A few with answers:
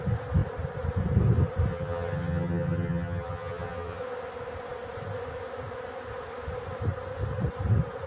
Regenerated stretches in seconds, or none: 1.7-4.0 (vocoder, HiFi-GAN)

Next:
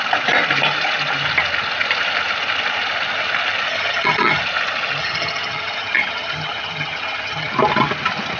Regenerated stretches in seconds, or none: 3.7-4.4 (vocoder, HiFi-GAN); 5.0-7.5

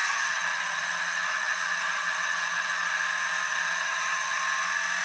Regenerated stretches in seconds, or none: 0.0-2.9 (vocoder, HiFi-GAN); 3.5-4.4

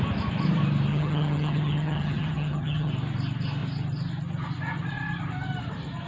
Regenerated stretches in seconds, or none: 0.9-2.9 (vocoder, HiFi-GAN)

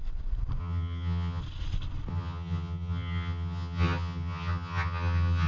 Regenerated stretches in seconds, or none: 0.6-1.4 (vocoder, HiFi-GAN); 2.1-5.5

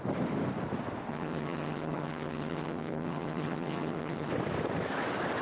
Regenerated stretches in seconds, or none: 1.1-4.3 (vocoder, HiFi-GAN)